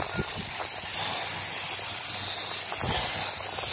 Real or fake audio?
real